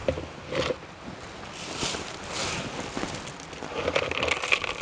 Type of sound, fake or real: real